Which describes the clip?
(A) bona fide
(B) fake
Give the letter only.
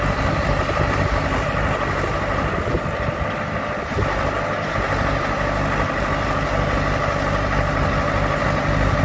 A